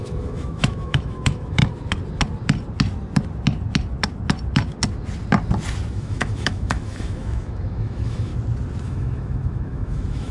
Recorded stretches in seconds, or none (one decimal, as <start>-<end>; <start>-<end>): 1.6-5.9; 8.3-8.8